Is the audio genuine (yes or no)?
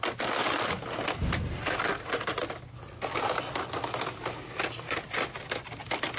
yes